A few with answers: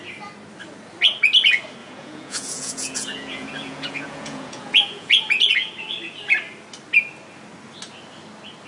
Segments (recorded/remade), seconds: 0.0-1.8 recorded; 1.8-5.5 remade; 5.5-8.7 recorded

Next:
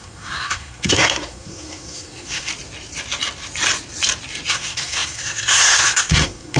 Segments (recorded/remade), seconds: 0.0-2.5 remade; 2.5-4.5 recorded; 4.5-6.6 remade

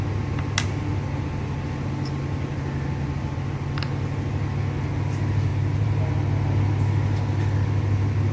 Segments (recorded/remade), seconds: 0.0-5.5 recorded; 5.5-6.0 remade; 6.0-8.3 recorded

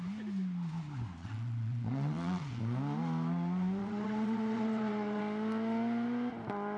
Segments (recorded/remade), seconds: 0.0-1.2 recorded; 1.2-2.6 remade; 2.6-3.8 recorded; 3.8-5.2 remade; 5.2-6.8 recorded

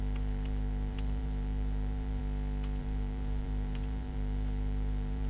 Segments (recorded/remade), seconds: 0.0-2.2 remade; 2.2-2.8 recorded; 2.8-5.3 remade

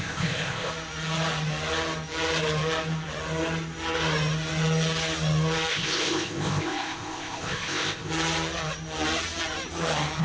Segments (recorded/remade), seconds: 0.0-0.7 remade; 0.7-5.7 recorded; 5.7-8.1 remade; 8.1-10.2 recorded

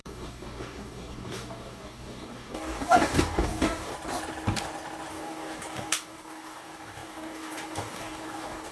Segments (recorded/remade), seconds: 0.0-3.9 remade; 3.9-5.1 recorded; 5.1-8.7 remade